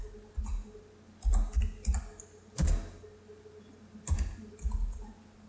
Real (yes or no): yes